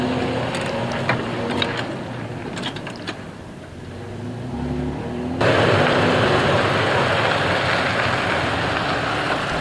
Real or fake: real